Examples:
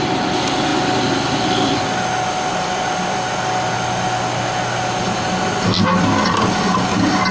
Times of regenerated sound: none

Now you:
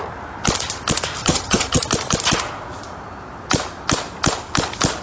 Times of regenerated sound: 1.2-1.9 (vocoder, HiFi-GAN)